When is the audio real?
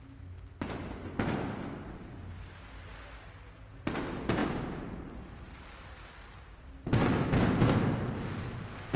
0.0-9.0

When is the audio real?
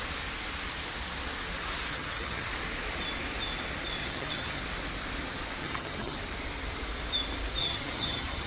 0.0-1.9; 2.5-4.0; 4.6-5.6; 6.2-7.6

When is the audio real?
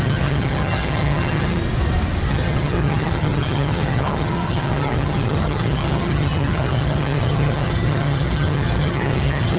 1.6-2.3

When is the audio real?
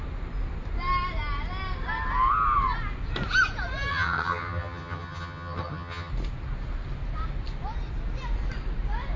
0.0-3.9; 6.1-9.2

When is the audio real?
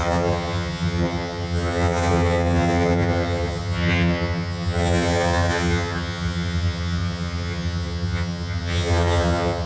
none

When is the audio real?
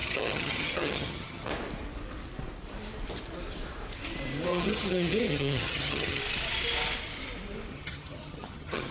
1.5-4.5; 6.2-7.7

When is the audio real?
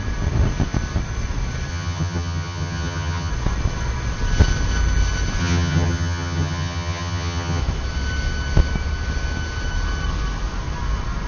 0.0-1.7; 3.3-5.4; 7.6-11.3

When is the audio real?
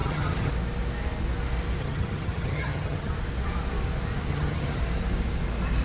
0.5-1.8; 3.1-4.3; 4.8-5.8